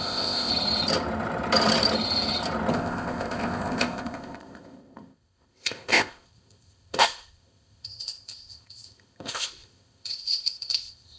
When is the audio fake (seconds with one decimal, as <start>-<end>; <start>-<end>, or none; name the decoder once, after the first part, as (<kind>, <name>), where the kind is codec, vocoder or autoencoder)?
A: 0.0-0.5 (codec, ZipCodec); 2.7-11.2